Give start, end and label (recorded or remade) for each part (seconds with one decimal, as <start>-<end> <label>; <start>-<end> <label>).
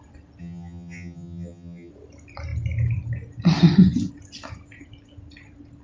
0.0-0.4 recorded; 0.4-1.9 remade; 1.9-5.8 recorded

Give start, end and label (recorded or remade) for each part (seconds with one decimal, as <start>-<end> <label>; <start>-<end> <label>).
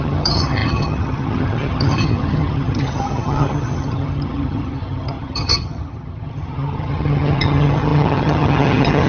0.0-9.1 remade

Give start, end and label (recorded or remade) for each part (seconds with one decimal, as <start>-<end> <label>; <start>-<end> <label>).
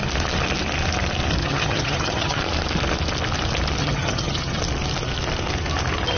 0.0-1.4 recorded; 1.4-2.4 remade; 2.4-3.8 recorded; 3.8-4.6 remade; 4.6-6.2 recorded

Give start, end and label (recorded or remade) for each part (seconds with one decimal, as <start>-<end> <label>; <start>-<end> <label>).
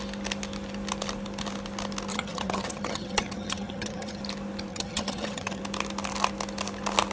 0.0-2.1 recorded; 2.1-4.2 remade; 4.2-4.7 recorded; 4.7-5.6 remade; 5.6-7.1 recorded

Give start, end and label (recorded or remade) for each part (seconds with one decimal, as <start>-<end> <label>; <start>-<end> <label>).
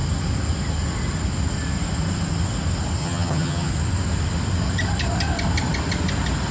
0.0-3.0 recorded; 3.0-3.7 remade; 3.7-6.5 recorded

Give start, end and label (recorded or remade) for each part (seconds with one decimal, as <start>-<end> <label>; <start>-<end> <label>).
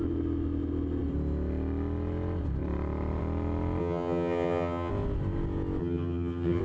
0.0-3.8 recorded; 3.8-4.9 remade; 4.9-5.8 recorded; 5.8-6.6 remade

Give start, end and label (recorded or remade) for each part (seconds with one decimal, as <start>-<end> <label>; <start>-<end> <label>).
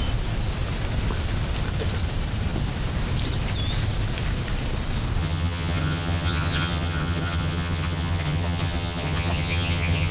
0.0-5.2 recorded; 5.2-10.1 remade